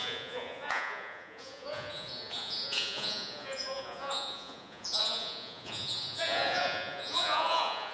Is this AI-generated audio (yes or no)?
yes